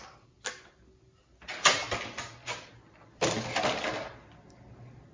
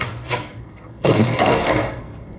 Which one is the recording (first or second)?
first